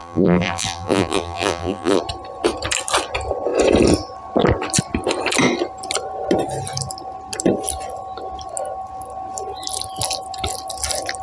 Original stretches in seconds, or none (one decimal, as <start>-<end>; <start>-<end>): 2.0-11.2